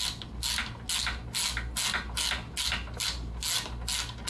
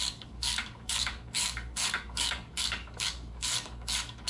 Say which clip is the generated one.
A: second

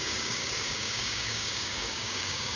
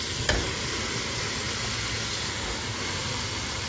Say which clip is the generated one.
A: first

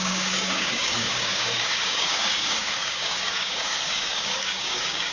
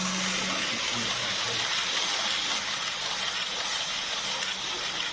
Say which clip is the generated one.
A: first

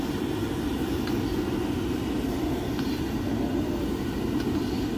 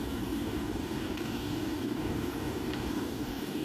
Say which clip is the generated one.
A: second